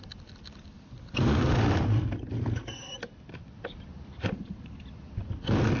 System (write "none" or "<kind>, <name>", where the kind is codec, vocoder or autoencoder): vocoder, BigVGAN v2